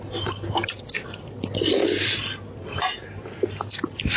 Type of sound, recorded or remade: recorded